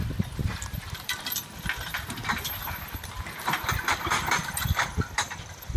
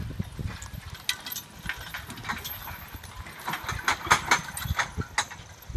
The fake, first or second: first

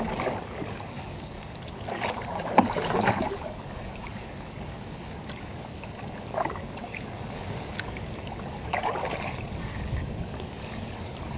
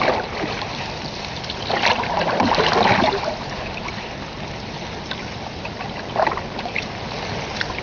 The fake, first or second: first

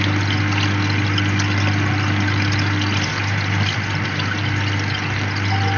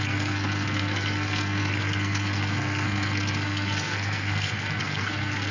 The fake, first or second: second